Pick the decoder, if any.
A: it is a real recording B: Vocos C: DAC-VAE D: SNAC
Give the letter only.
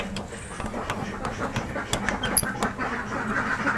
A